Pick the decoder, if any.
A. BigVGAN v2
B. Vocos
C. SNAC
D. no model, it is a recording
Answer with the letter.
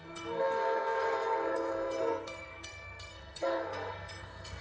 C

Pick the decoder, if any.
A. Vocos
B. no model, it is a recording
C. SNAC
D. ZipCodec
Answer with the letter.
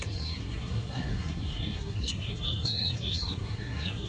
C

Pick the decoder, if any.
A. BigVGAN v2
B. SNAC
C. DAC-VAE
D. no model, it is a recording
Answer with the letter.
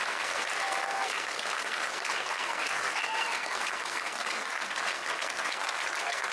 B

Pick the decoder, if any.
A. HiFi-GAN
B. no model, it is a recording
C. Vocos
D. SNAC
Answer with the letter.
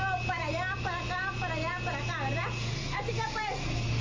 B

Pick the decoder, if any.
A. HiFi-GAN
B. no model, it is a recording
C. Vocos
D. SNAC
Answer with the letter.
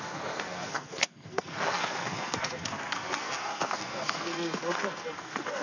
D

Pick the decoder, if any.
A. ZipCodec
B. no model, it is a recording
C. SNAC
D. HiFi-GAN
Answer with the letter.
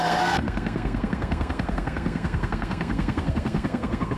C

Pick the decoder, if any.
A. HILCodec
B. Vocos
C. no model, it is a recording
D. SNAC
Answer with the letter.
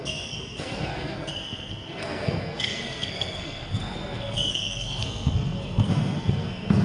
D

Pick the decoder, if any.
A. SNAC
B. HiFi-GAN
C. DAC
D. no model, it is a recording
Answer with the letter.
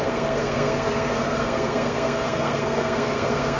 A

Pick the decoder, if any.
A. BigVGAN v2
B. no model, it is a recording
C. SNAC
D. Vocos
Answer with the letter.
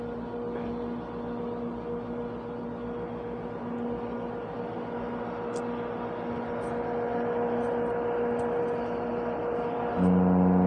B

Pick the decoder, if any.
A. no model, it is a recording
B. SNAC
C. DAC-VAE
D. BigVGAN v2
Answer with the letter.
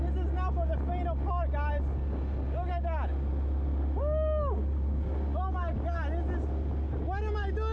A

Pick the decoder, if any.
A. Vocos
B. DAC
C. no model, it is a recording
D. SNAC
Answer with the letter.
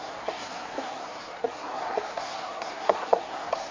D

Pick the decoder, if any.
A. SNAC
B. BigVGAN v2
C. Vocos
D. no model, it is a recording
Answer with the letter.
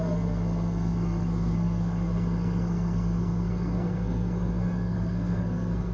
A